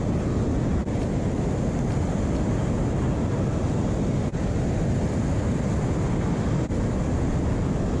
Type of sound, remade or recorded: recorded